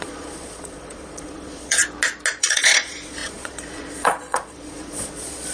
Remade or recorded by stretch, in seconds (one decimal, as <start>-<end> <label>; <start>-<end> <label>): 0.0-1.8 remade; 1.8-2.4 recorded; 2.4-5.5 remade